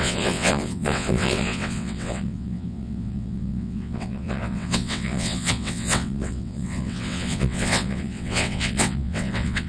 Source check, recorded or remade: remade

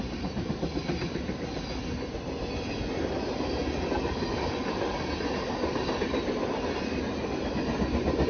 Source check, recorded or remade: recorded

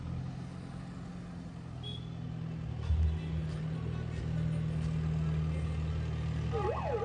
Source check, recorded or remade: recorded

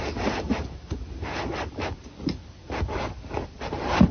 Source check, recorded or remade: recorded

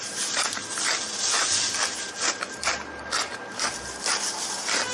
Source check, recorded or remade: remade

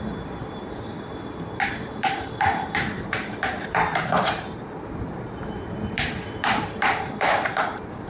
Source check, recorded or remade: remade